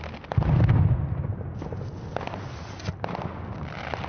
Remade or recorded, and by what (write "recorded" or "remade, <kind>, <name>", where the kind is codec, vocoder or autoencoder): recorded